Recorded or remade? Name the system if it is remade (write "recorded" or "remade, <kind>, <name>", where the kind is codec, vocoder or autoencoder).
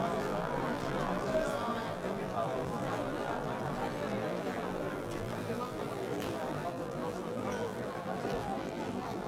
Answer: remade, vocoder, BigVGAN v2